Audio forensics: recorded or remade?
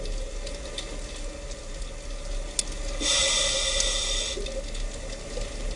recorded